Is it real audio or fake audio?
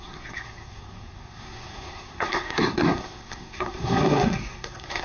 fake